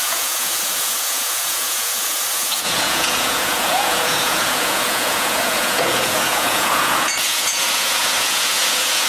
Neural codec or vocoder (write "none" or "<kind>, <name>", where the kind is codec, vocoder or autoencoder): vocoder, Vocos